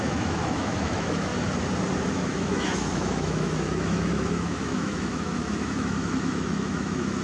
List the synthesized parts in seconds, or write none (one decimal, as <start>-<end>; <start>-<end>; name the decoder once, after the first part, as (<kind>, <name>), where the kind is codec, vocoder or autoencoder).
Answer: 0.0-1.3 (autoencoder, DAC-VAE); 2.1-7.2